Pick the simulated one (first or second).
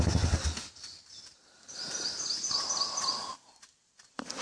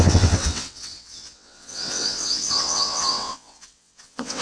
second